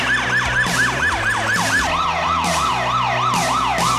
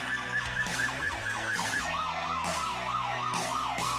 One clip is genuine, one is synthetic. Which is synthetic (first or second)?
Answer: second